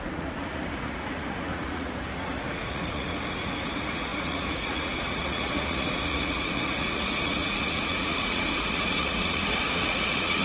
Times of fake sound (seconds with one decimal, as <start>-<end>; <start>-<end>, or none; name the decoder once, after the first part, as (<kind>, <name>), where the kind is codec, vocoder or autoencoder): 0.0-10.4 (vocoder, Vocos)